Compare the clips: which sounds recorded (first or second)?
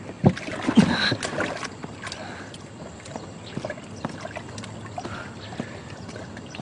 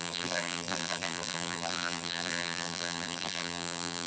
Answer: first